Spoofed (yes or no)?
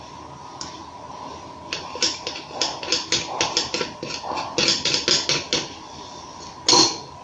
no